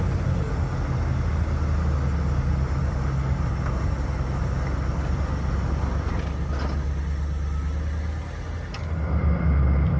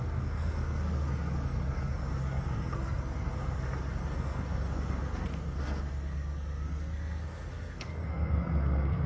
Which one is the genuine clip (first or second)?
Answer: first